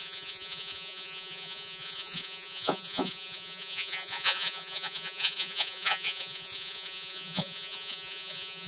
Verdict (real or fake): fake